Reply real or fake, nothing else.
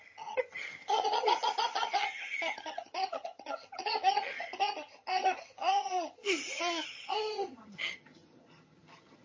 fake